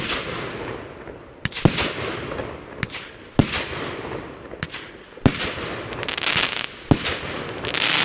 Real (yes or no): yes